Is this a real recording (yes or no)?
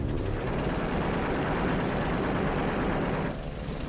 yes